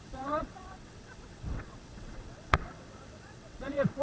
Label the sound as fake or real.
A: fake